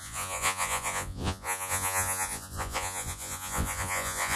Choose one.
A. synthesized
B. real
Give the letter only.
A